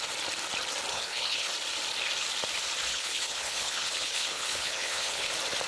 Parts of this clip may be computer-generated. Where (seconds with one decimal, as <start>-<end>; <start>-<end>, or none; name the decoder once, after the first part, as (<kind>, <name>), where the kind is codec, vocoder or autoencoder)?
0.9-1.5 (codec, HILCodec); 2.9-5.3